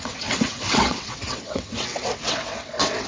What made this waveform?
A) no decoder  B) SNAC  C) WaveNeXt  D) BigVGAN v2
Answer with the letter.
C